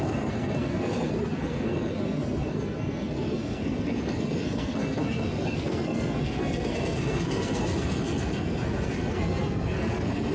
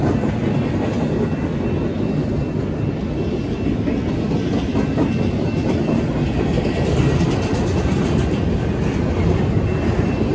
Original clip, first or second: second